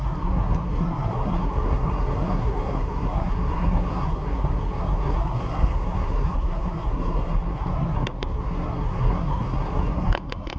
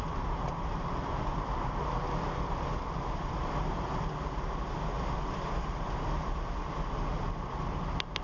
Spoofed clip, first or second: first